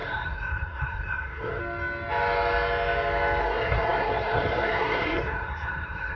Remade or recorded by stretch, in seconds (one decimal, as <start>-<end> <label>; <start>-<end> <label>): 0.0-1.6 remade; 1.6-3.4 recorded; 3.4-6.2 remade